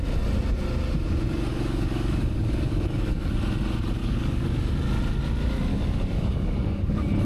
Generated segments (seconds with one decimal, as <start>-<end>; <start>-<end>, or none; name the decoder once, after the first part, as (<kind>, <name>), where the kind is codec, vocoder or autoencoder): 1.5-3.4 (codec, DAC); 4.0-4.7; 5.7-7.2